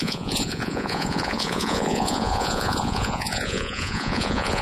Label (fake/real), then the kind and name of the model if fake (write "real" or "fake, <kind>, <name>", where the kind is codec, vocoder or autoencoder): fake, vocoder, Vocos